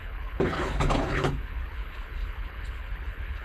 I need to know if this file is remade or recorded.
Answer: remade